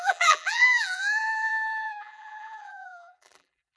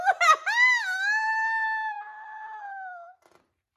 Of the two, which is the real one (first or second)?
second